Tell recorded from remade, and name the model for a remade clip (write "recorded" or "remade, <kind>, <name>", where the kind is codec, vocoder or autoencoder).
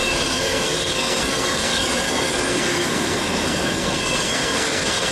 remade, codec, SNAC